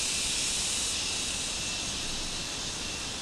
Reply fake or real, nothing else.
real